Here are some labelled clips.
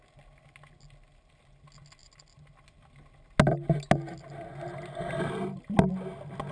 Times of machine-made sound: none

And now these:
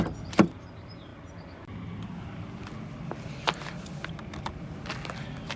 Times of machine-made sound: none

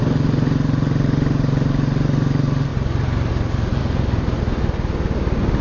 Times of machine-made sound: 2.7-3.3; 3.8-4.6